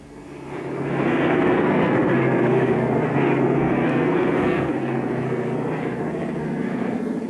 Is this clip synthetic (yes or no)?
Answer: yes